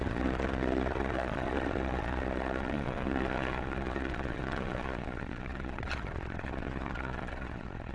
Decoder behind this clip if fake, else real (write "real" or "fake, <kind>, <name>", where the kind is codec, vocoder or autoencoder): fake, vocoder, Vocos